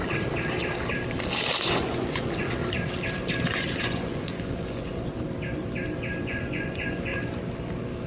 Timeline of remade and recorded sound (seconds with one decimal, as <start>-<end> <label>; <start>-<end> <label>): 0.0-1.6 recorded; 1.6-2.6 remade; 2.6-3.8 recorded; 3.8-4.9 remade; 4.9-6.2 recorded; 6.2-7.1 remade; 7.1-8.1 recorded